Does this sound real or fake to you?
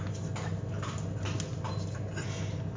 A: real